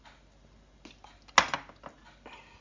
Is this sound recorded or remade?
recorded